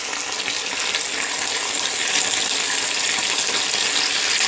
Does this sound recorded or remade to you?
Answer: recorded